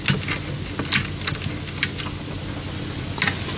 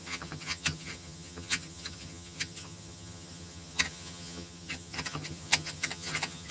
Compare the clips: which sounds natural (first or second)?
first